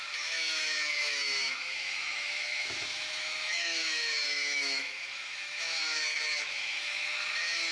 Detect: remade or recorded remade